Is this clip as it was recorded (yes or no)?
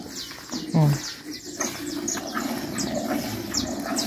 yes